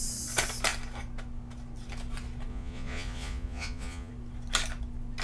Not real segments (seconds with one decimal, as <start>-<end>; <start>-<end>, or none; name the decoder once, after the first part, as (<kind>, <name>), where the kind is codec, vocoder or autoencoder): 2.5-4.1 (vocoder, Vocos)

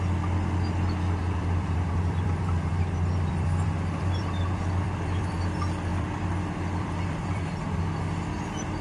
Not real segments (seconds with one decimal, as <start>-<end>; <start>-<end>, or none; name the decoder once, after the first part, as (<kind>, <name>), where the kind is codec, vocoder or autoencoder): 1.2-5.3 (vocoder, BigVGAN v2); 5.9-7.8